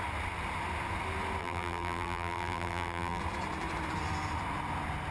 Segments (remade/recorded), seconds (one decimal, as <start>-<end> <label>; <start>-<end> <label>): 0.0-1.4 recorded; 1.4-3.2 remade; 3.2-5.1 recorded